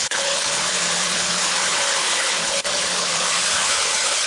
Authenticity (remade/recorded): remade